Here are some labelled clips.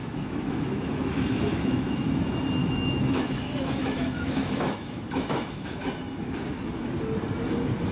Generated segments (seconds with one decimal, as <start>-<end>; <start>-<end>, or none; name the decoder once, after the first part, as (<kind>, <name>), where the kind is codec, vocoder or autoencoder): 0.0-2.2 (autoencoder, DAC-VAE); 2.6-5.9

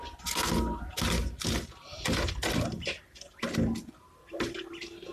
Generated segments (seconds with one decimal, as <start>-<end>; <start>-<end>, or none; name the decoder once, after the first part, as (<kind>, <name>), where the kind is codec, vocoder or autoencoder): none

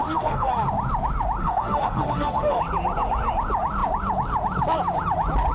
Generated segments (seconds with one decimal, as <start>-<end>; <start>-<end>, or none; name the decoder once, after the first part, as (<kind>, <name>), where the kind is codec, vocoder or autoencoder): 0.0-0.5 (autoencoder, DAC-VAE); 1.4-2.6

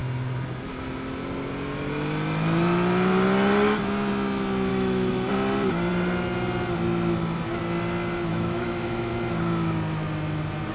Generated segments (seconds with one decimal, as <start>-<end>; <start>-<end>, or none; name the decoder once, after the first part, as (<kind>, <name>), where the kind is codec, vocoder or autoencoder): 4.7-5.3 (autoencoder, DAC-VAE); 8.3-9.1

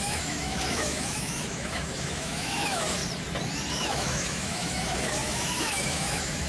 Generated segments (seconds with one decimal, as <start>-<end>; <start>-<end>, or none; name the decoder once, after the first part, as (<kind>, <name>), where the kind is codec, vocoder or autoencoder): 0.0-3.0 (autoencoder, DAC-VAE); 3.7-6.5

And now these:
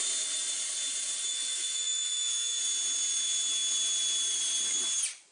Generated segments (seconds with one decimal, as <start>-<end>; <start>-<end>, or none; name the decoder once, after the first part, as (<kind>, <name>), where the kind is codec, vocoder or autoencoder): 1.3-2.6 (autoencoder, DAC-VAE)

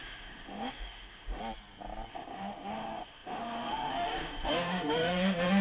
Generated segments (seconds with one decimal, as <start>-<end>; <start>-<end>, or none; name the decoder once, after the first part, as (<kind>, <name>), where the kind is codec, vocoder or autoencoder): 0.0-1.4 (autoencoder, DAC-VAE); 2.1-5.6